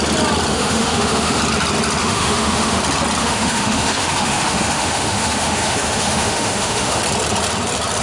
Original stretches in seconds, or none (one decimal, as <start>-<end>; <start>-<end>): 0.0-0.5; 1.4-2.0; 2.8-3.2; 7.0-8.0